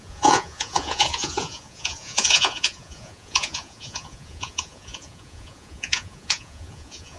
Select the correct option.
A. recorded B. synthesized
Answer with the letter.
B